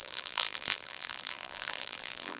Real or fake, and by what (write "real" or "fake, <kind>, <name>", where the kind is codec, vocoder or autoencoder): fake, vocoder, BigVGAN v2